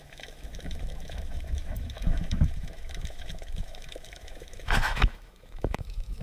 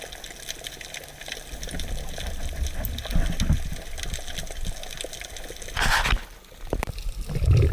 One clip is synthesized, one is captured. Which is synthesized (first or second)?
first